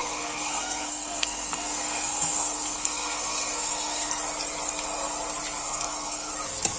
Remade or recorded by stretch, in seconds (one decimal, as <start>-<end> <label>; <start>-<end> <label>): 0.0-4.1 remade; 4.1-5.6 recorded; 5.6-6.3 remade; 6.3-6.8 recorded